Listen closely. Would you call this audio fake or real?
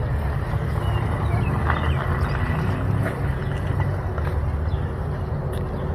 real